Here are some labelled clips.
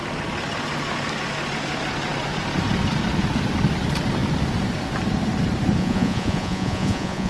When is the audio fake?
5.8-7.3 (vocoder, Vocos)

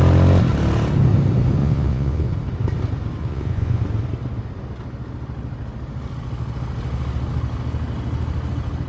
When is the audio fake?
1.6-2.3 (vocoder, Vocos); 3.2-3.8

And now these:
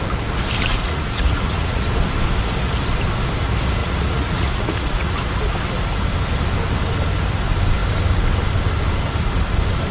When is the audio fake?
0.7-1.8 (vocoder, Vocos); 3.8-5.1

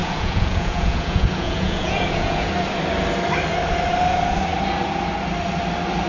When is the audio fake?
0.0-2.5 (vocoder, Vocos)

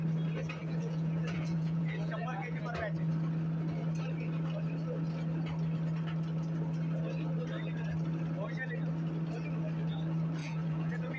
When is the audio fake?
0.6-2.6 (vocoder, Vocos); 10.4-11.2